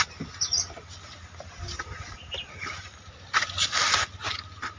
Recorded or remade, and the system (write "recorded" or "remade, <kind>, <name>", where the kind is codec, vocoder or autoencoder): recorded